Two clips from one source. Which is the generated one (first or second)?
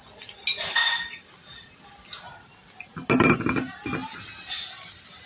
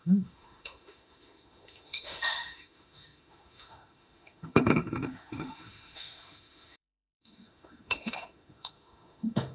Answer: second